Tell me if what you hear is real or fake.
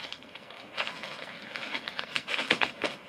fake